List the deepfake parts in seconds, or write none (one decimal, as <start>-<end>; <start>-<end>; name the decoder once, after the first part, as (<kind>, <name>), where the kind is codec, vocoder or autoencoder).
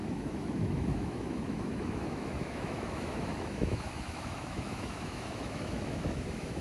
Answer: 0.0-6.6 (autoencoder, DAC-VAE)